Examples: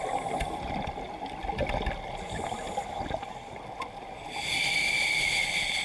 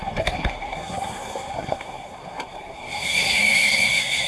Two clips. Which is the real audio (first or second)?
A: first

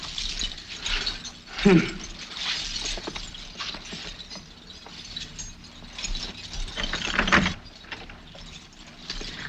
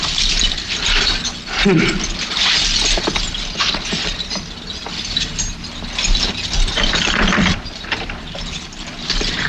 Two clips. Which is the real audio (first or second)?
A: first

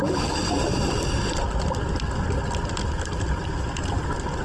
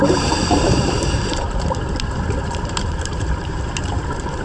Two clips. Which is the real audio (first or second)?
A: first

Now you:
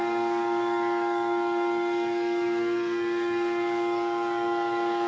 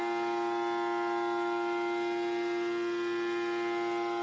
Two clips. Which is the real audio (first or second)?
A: second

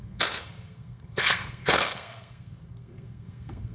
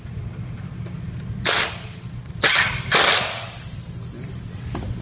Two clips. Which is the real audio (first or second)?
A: second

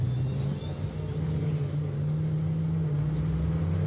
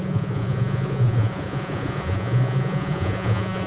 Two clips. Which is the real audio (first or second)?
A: first